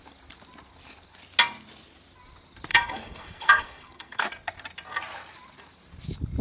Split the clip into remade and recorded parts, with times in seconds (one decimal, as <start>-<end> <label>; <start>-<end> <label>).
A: 0.0-2.7 recorded; 2.7-4.2 remade; 4.2-6.4 recorded